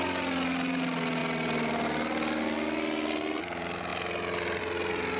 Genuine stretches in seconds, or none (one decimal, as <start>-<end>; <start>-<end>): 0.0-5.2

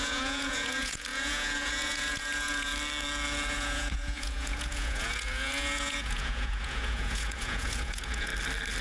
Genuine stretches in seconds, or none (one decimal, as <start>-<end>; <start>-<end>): 2.7-3.5; 8.3-8.8

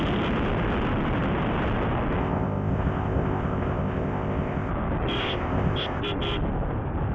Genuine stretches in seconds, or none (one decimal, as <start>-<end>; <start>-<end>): 0.0-2.2; 4.7-5.2; 6.0-7.1